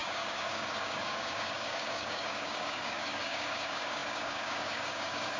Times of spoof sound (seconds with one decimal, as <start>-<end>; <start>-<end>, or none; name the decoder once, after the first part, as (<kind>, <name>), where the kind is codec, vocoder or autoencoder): 0.0-5.4 (codec, DAC)